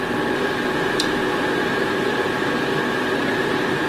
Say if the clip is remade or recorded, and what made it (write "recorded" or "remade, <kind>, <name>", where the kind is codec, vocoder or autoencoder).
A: recorded